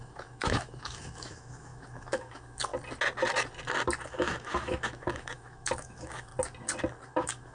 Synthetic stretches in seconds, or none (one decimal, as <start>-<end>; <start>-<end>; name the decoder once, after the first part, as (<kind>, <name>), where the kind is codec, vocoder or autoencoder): 0.0-2.7 (autoencoder, DAC-VAE); 4.1-6.3; 7.1-7.5